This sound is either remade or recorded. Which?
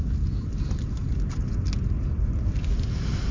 recorded